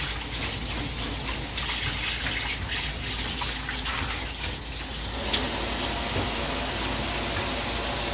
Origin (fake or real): real